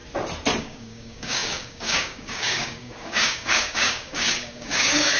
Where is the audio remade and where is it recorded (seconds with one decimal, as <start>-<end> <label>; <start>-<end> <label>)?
0.0-0.6 recorded; 0.6-5.2 remade

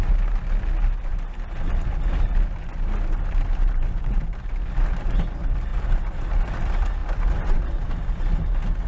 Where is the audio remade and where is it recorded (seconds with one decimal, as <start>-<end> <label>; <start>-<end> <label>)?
0.0-5.7 recorded; 5.7-6.3 remade; 6.3-7.0 recorded; 7.0-7.7 remade; 7.7-8.9 recorded

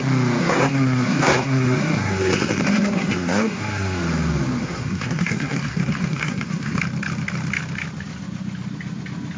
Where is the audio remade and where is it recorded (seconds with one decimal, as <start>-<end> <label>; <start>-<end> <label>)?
0.0-0.4 recorded; 0.4-4.0 remade; 4.0-4.6 recorded; 4.6-6.8 remade; 6.8-9.4 recorded

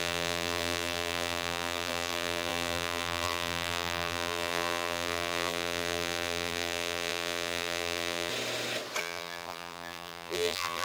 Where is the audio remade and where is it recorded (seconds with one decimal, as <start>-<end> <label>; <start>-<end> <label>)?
0.0-8.3 remade; 8.3-9.0 recorded; 9.0-10.8 remade

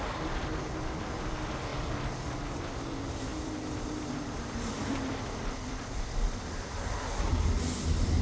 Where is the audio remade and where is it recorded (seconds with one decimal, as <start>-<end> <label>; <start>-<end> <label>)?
0.0-3.3 recorded; 3.3-7.0 remade; 7.0-8.2 recorded

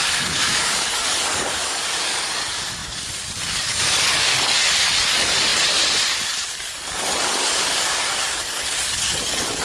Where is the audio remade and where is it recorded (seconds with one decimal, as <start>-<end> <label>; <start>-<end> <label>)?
0.0-9.6 remade

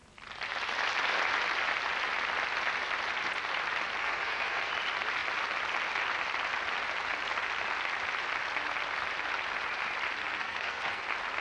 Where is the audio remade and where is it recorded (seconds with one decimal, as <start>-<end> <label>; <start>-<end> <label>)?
0.0-4.0 recorded; 4.0-4.7 remade; 4.7-10.2 recorded; 10.2-11.0 remade; 11.0-11.4 recorded